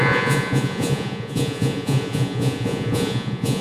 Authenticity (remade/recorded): remade